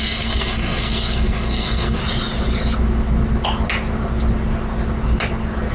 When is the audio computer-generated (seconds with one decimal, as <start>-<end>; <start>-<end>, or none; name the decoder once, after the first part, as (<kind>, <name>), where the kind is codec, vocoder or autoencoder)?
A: 0.0-2.0 (codec, SNAC)